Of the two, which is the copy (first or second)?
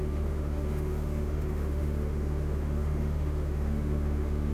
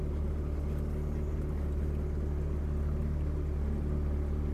first